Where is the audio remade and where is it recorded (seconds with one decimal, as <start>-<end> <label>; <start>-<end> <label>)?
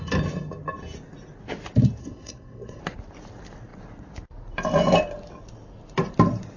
0.0-2.0 recorded; 2.0-2.8 remade; 2.8-6.6 recorded